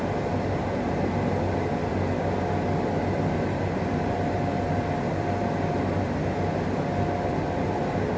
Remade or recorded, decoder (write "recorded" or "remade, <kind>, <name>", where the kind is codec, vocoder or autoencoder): recorded